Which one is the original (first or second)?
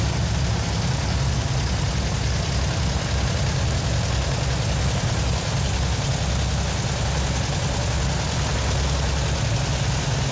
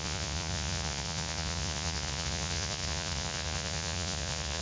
first